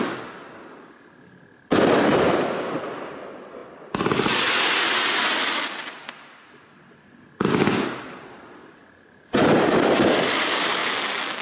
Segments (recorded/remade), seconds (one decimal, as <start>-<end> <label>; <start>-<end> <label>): 0.0-11.4 recorded